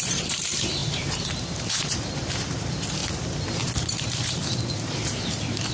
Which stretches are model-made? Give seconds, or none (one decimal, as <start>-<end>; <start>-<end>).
0.0-3.0; 3.8-5.7